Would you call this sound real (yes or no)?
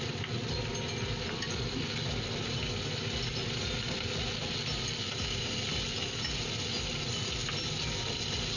yes